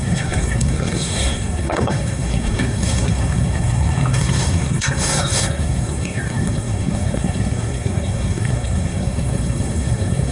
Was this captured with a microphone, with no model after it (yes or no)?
no